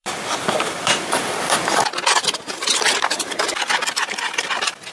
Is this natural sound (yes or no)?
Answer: no